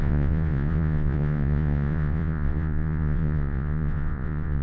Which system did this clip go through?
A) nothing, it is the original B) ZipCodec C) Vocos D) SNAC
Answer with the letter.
C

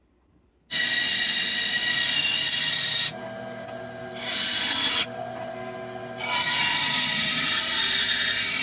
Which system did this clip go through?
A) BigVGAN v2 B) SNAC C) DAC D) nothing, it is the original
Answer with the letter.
D